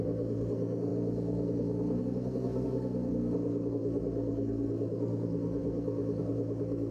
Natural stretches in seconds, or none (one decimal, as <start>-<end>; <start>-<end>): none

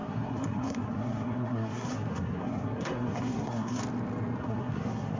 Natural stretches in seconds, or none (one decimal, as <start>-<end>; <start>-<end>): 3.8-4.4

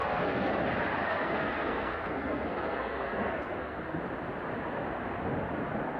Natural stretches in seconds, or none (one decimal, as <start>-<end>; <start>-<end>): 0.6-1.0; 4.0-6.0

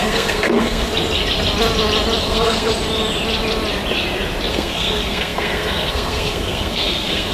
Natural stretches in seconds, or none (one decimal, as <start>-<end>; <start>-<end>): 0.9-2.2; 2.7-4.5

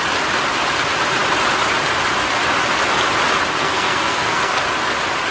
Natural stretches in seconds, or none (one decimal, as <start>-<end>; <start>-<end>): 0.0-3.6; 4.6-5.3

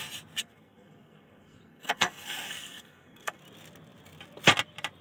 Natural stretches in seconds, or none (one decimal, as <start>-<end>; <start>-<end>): 0.0-0.4; 3.4-5.0

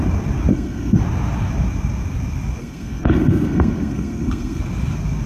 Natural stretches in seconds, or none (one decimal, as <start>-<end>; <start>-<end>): 0.0-0.5; 1.0-2.6; 4.6-5.3

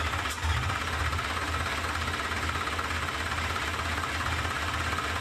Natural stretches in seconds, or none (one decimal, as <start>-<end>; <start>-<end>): 0.0-5.2